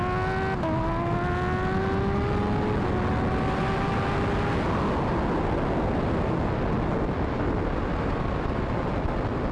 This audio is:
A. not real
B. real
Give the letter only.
B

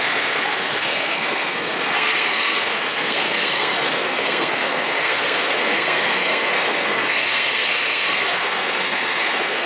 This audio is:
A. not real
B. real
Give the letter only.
A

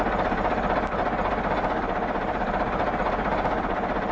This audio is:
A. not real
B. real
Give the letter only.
B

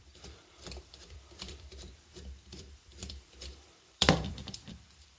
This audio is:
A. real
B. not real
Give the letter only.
B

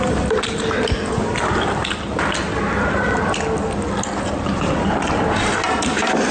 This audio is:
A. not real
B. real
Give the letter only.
B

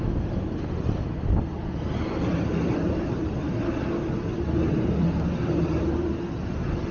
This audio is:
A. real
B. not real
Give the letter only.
A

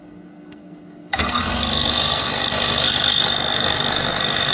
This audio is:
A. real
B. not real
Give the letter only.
B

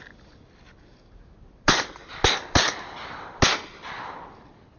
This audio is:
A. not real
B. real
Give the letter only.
B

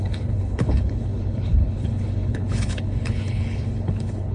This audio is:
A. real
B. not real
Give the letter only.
B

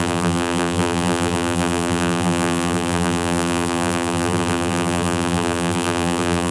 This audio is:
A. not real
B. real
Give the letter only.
A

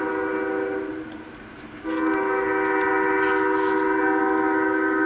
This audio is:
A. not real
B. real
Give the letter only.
B